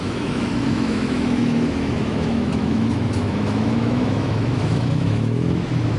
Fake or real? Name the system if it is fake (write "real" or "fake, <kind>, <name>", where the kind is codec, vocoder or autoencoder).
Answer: fake, autoencoder, DAC-VAE